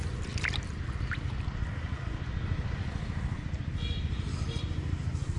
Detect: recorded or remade recorded